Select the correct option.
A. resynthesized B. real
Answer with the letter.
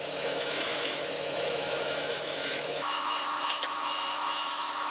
A